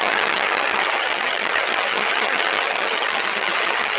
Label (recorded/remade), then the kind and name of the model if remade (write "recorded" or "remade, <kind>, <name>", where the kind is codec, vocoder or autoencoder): remade, vocoder, HiFi-GAN